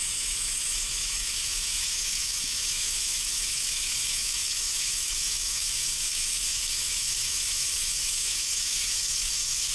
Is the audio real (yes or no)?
no